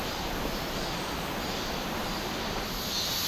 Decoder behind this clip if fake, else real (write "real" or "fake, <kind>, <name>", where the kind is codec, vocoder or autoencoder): real